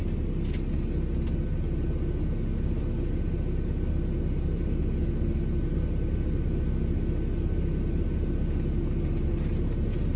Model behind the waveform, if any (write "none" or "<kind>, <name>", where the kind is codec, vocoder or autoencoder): none